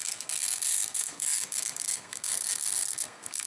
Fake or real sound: fake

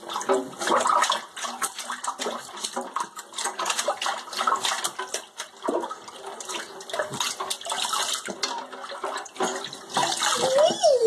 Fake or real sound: real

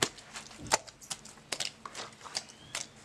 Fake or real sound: real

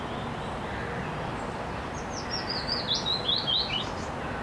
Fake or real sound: real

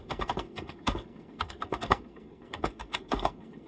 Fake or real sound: fake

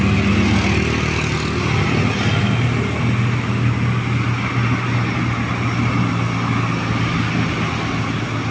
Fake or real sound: real